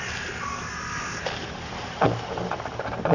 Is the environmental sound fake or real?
real